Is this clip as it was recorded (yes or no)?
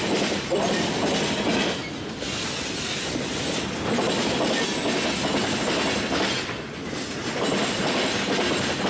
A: yes